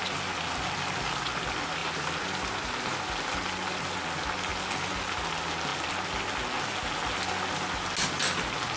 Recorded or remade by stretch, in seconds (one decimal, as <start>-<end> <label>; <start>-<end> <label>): 0.0-8.8 recorded